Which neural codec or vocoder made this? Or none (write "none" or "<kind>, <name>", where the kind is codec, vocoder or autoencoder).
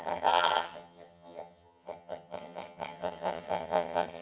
vocoder, HiFi-GAN